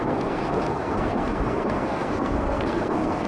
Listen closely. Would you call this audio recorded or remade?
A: remade